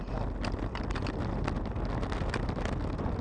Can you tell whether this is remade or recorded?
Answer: recorded